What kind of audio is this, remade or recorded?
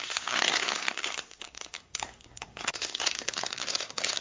remade